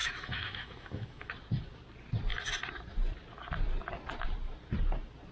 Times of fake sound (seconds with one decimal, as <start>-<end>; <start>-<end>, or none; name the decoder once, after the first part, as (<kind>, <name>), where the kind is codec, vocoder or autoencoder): 0.0-1.3 (autoencoder, DAC-VAE)